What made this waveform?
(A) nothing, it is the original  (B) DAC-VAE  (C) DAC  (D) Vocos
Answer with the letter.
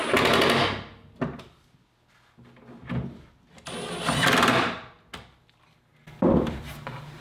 A